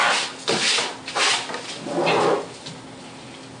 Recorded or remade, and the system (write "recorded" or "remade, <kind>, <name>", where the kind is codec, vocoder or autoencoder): recorded